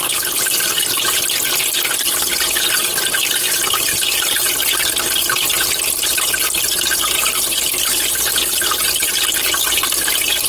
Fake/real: real